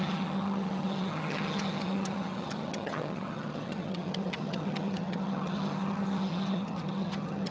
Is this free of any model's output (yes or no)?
no